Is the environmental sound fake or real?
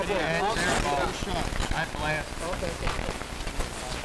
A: real